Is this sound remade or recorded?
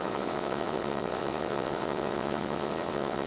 remade